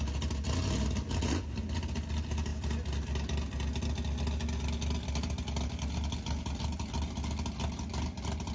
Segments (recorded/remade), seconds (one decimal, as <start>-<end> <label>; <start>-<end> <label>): 0.0-8.5 recorded